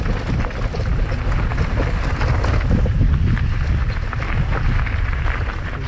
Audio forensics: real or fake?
real